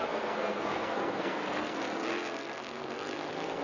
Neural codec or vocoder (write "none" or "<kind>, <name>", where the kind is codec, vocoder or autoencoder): codec, SNAC